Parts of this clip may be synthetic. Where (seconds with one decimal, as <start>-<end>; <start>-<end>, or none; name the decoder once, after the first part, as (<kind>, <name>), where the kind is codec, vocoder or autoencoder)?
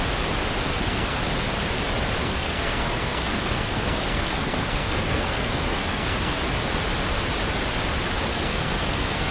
0.7-1.2 (codec, SNAC); 2.2-6.4; 8.3-9.3